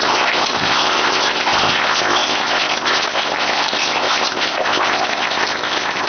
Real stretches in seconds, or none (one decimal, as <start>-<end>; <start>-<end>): none